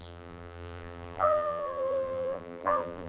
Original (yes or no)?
no